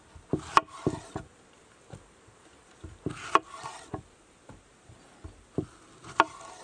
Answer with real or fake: real